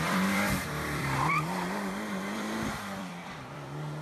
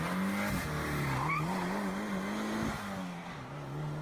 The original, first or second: second